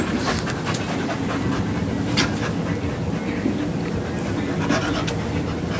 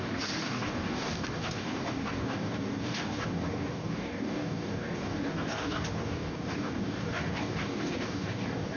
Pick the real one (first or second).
first